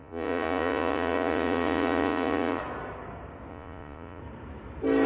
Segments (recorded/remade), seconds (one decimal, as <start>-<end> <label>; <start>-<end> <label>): 0.0-2.6 remade; 2.6-3.5 recorded; 3.5-4.2 remade; 4.2-5.1 recorded